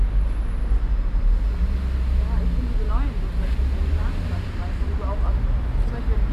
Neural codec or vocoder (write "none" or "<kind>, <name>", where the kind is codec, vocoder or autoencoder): none